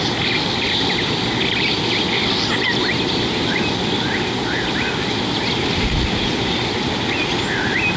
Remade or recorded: recorded